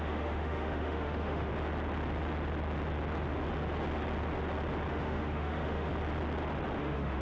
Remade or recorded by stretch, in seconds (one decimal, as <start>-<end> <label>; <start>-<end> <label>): 0.0-1.5 remade; 1.5-4.9 recorded; 4.9-5.9 remade; 5.9-6.8 recorded; 6.8-7.2 remade